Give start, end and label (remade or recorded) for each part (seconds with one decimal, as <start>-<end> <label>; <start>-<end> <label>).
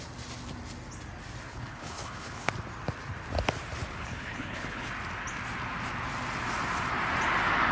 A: 0.0-1.5 recorded; 1.5-2.5 remade; 2.5-3.9 recorded; 3.9-4.9 remade; 4.9-7.7 recorded